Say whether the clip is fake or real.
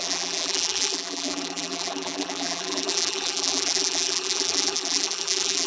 fake